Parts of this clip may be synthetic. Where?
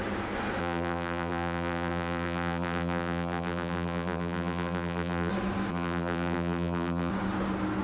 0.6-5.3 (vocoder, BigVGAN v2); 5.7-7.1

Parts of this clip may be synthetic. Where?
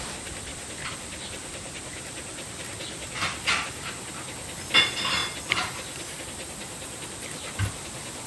0.5-3.9 (vocoder, BigVGAN v2)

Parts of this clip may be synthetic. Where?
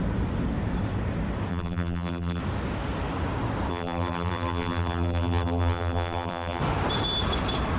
1.5-2.4 (vocoder, BigVGAN v2); 3.7-6.6